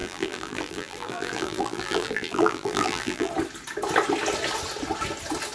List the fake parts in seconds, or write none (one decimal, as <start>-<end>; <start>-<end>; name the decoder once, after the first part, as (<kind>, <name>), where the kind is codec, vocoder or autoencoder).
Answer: 0.0-3.3 (vocoder, BigVGAN v2)